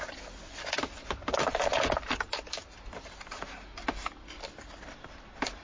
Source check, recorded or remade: remade